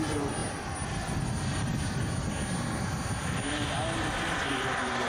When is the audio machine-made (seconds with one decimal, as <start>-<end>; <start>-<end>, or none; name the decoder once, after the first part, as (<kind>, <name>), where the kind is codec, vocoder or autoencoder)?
none